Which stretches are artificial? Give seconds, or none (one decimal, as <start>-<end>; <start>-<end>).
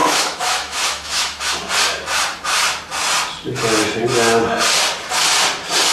0.0-1.4